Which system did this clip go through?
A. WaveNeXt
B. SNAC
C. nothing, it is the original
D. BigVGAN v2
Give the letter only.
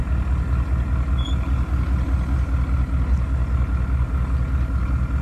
C